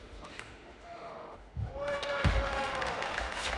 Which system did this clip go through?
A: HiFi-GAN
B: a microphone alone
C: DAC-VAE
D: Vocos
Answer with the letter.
C